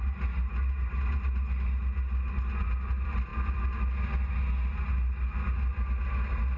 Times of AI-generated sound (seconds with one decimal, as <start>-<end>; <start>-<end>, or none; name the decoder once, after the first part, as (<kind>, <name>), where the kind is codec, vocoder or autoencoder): none